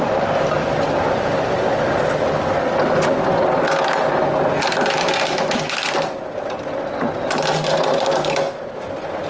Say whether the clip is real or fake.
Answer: real